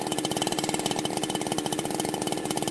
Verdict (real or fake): fake